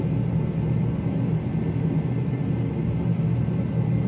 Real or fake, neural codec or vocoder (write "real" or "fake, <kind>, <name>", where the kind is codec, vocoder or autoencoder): real